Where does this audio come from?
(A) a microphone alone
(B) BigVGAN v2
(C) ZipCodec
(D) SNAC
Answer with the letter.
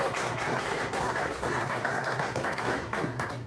D